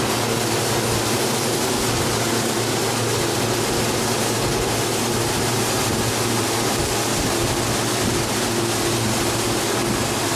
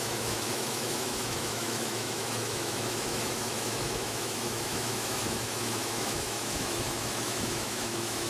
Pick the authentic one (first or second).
first